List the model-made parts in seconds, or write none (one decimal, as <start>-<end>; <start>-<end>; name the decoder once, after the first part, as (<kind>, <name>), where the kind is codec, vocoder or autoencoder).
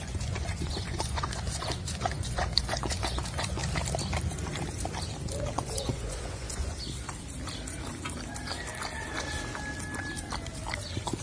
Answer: 0.0-3.6 (vocoder, Vocos); 5.5-6.7